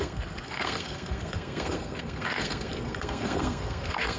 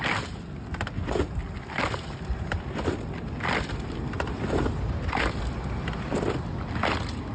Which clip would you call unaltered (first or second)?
second